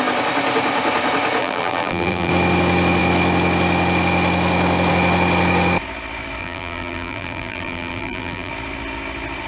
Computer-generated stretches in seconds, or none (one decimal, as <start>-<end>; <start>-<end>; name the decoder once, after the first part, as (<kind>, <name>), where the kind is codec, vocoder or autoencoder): 1.4-2.3 (vocoder, BigVGAN v2); 6.4-8.5